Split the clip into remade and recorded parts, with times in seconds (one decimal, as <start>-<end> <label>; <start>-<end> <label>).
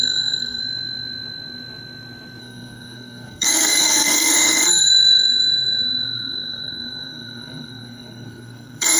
0.0-0.6 remade; 0.6-2.4 recorded; 2.4-9.0 remade